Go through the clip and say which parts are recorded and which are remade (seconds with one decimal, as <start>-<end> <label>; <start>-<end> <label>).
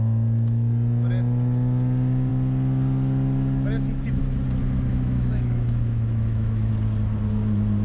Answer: 0.0-4.9 recorded; 4.9-6.7 remade; 6.7-7.8 recorded